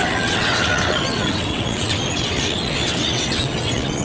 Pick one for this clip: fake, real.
fake